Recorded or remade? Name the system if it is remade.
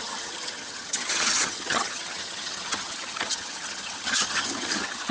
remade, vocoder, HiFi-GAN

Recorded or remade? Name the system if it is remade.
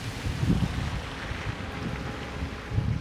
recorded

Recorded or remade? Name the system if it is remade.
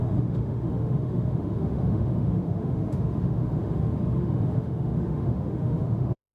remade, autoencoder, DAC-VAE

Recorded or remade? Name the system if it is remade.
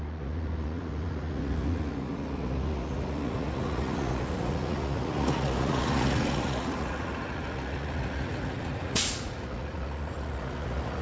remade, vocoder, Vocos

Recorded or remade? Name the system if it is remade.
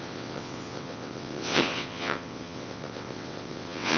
remade, vocoder, WaveNeXt